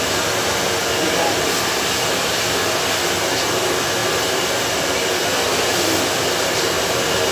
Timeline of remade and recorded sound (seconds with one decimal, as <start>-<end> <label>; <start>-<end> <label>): 0.0-7.3 recorded

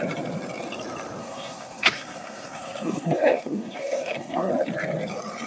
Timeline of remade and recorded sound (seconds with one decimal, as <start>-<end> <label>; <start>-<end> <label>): 0.0-1.2 recorded; 1.2-4.5 remade; 4.5-5.5 recorded

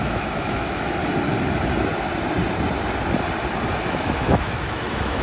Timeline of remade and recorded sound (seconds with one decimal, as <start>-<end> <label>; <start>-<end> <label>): 0.0-1.0 remade; 1.0-3.9 recorded; 3.9-5.2 remade

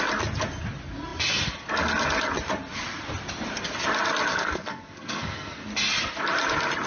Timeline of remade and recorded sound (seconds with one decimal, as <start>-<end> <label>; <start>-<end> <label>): 0.0-4.3 recorded; 4.3-5.6 remade; 5.6-6.9 recorded

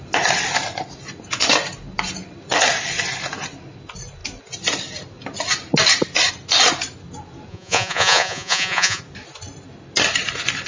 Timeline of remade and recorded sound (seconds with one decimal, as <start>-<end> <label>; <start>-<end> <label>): 0.0-7.5 recorded; 7.5-9.0 remade; 9.0-10.7 recorded